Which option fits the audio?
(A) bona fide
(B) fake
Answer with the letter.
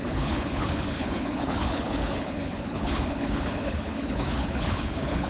B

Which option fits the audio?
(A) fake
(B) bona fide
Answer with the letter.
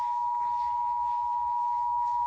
B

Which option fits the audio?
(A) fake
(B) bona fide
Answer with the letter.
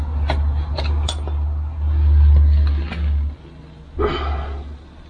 B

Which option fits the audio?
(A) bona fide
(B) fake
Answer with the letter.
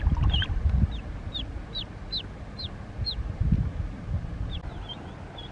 A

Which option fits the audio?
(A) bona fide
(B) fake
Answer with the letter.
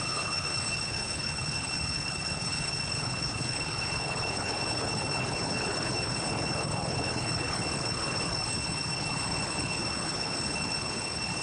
B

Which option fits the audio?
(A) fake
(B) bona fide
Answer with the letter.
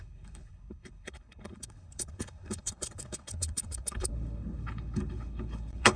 A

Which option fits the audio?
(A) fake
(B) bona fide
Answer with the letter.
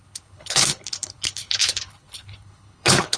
A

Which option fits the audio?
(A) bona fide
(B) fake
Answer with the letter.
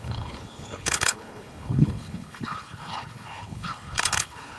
B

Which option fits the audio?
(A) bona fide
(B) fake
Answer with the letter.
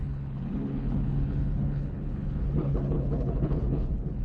B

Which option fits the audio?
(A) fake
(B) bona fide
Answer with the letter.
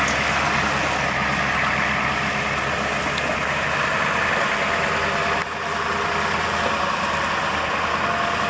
B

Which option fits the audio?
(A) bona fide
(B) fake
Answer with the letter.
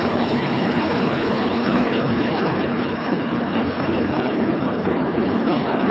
B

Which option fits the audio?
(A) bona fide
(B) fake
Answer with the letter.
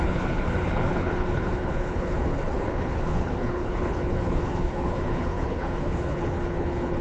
B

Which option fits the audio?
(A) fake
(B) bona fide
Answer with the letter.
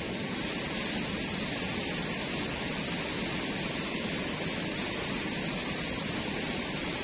B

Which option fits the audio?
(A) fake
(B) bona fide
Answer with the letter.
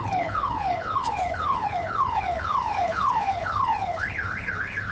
A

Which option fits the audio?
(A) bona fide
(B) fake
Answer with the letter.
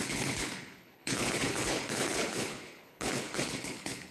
B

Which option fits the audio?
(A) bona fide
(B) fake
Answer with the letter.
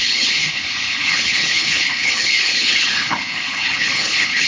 B